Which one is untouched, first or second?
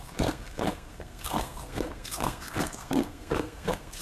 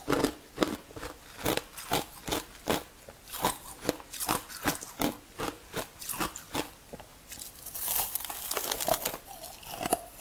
second